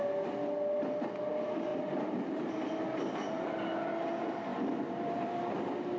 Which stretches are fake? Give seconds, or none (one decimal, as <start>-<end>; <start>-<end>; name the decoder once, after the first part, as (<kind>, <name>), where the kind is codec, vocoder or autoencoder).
1.7-2.5 (vocoder, BigVGAN v2); 4.5-5.4